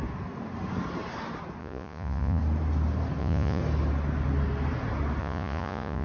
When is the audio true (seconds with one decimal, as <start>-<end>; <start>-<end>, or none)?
0.0-1.6; 2.4-3.2; 3.6-5.2